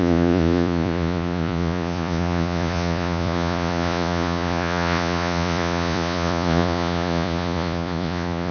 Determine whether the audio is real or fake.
fake